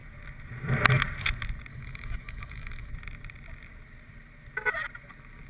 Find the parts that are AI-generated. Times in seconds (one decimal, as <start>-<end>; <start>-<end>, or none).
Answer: 1.7-2.9